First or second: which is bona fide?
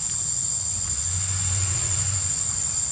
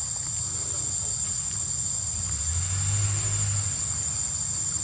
second